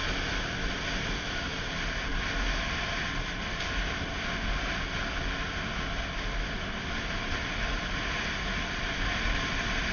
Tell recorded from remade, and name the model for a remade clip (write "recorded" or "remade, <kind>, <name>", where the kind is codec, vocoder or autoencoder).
recorded